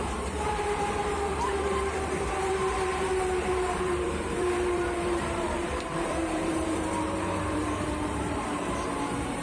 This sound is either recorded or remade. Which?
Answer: remade